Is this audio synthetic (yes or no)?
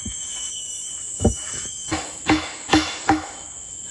yes